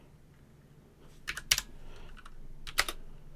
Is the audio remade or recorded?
recorded